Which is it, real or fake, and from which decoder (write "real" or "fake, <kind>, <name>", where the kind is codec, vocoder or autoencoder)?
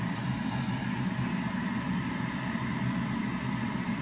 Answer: real